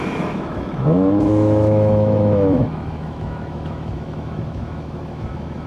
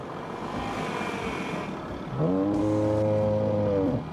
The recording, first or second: second